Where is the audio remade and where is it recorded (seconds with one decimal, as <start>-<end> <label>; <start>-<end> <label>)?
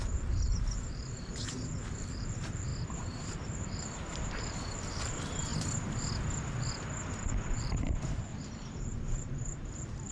0.0-2.7 remade; 2.7-3.3 recorded; 3.3-5.5 remade; 5.5-7.1 recorded; 7.1-8.3 remade; 8.3-8.8 recorded; 8.8-10.1 remade